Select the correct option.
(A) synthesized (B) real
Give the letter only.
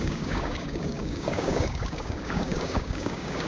A